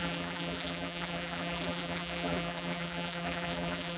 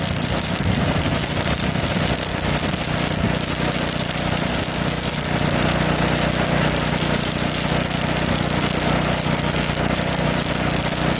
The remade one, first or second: first